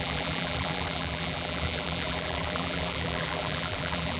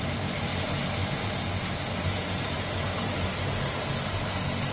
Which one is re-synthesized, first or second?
first